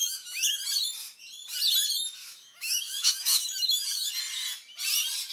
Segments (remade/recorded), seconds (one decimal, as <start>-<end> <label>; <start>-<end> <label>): 0.0-0.6 remade; 0.6-2.2 recorded; 2.2-4.1 remade; 4.1-5.3 recorded